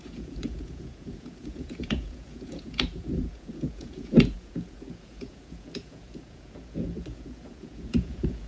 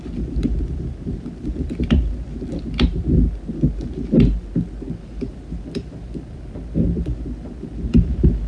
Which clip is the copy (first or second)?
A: first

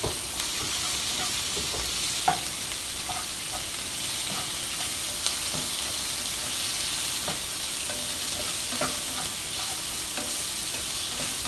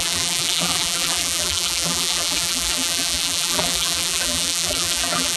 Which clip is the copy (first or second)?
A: second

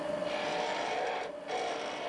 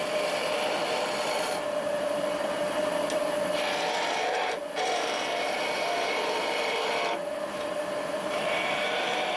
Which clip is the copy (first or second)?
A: second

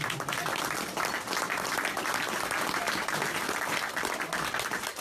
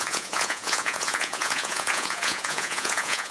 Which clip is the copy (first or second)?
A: second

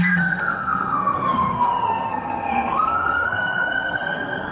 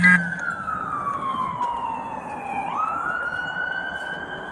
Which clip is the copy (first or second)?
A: first